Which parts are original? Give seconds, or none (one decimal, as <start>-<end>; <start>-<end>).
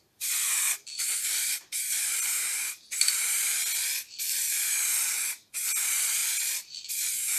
3.4-4.3; 6.2-6.9